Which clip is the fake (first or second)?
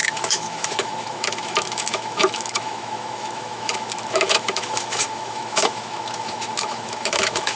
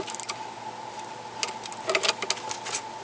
first